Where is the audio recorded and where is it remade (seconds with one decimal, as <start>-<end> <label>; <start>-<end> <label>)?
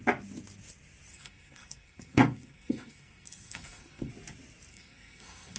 0.0-1.1 recorded; 1.1-4.1 remade; 4.1-4.7 recorded; 4.7-5.6 remade